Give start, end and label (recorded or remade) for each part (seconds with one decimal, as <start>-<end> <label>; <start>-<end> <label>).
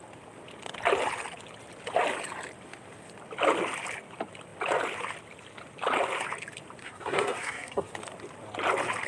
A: 0.0-6.8 recorded; 6.8-7.9 remade; 7.9-9.1 recorded